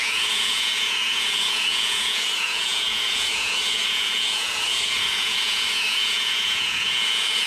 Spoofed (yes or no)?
yes